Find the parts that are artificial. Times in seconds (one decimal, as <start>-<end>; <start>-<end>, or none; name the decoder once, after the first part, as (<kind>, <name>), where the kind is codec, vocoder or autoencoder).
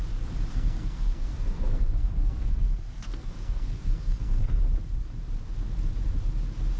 0.5-4.6 (codec, SNAC)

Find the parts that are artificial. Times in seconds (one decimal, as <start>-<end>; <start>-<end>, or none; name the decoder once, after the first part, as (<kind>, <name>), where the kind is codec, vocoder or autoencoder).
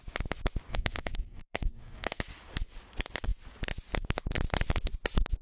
0.7-2.2 (codec, SNAC)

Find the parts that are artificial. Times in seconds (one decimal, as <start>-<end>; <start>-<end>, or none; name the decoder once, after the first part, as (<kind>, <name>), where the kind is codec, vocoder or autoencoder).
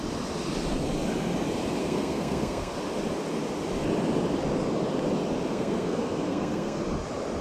1.8-2.7 (codec, SNAC); 5.5-6.8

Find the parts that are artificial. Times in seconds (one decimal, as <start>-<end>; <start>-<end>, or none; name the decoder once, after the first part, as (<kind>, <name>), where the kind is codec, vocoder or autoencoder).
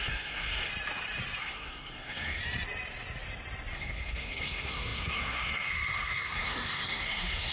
0.0-0.7 (codec, SNAC); 1.4-2.4; 3.7-7.5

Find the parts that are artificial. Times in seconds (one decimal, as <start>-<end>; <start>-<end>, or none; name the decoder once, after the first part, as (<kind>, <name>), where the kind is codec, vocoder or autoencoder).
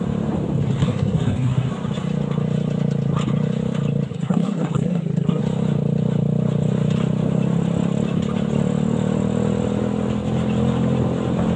0.8-1.7 (codec, SNAC); 4.1-5.4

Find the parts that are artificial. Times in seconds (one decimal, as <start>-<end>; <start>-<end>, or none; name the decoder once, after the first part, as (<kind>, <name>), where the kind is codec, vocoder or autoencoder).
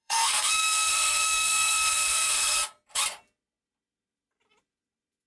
0.0-2.6 (codec, SNAC)